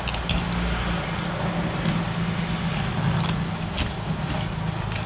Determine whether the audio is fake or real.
real